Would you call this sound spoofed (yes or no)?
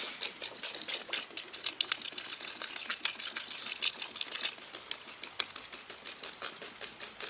no